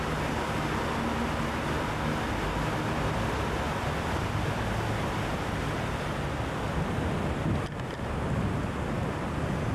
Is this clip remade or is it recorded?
recorded